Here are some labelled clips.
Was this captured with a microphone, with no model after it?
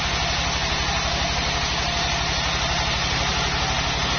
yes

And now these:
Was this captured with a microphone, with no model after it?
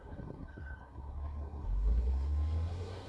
no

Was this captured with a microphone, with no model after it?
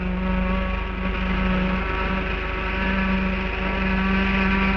yes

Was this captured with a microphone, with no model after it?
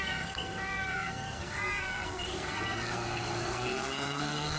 no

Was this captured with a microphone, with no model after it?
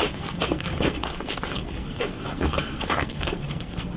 no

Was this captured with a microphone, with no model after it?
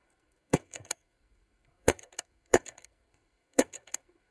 no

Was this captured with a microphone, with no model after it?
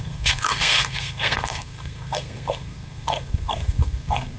no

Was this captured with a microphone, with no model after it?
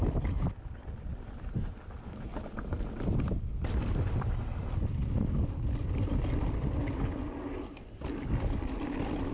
yes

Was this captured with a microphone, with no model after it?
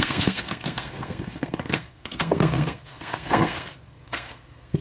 no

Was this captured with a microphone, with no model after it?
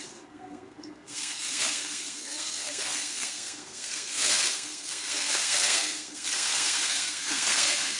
no